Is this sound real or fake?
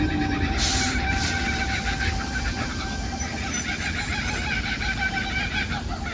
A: fake